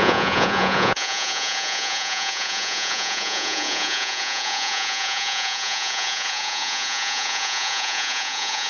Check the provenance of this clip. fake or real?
fake